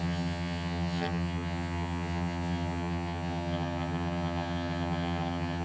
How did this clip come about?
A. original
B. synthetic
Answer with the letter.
B